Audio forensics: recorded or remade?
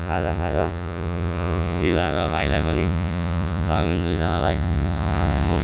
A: remade